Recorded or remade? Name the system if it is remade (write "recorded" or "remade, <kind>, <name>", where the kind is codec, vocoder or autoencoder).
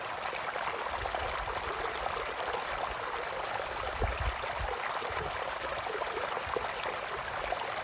remade, vocoder, BigVGAN v2